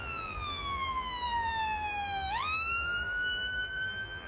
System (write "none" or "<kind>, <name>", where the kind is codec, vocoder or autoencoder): vocoder, BigVGAN v2